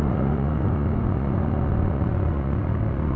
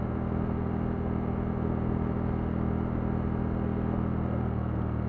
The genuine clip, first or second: second